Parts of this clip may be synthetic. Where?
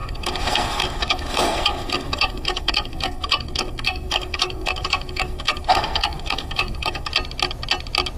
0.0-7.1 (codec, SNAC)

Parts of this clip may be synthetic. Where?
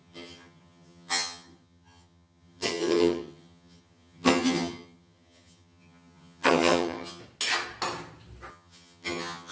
0.0-7.2 (vocoder, HiFi-GAN); 8.5-9.5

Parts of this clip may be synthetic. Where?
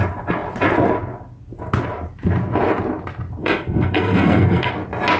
3.4-4.7 (codec, SNAC)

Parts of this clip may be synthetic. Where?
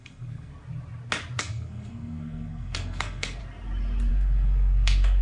0.0-0.5 (codec, SNAC); 1.4-3.4; 4.1-5.2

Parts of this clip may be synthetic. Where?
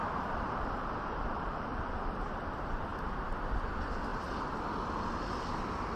0.0-2.0 (vocoder, BigVGAN v2); 4.1-4.7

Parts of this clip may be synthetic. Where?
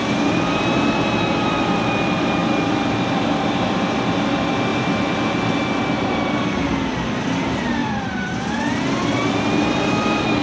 4.7-5.4 (vocoder, BigVGAN v2); 7.8-8.7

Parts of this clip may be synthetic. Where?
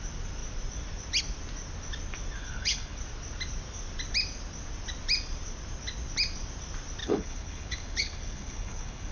2.4-3.0 (codec, HILCodec); 7.0-9.1